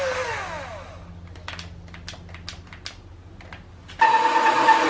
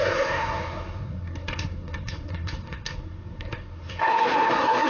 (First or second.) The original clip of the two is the first